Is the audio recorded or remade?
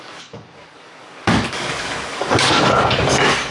remade